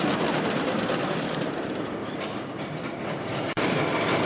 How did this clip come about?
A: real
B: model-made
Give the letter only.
A